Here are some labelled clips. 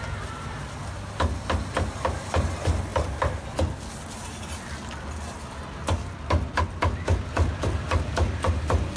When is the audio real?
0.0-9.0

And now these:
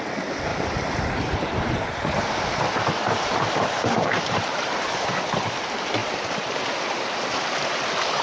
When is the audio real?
0.0-0.5; 5.0-6.0; 6.6-8.2

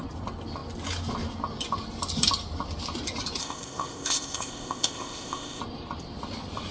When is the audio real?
0.0-3.4; 5.6-6.7

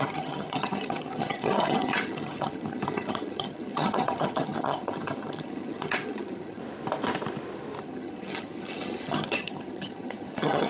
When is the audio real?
6.6-7.8

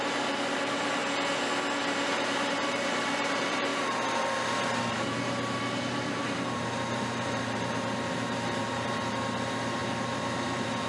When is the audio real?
1.0-2.1